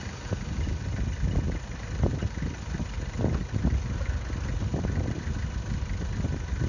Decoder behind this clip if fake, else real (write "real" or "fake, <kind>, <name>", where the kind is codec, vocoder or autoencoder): real